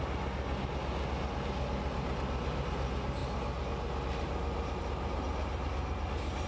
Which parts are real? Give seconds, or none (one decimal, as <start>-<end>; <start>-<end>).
0.0-6.5